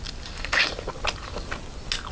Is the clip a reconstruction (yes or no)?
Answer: no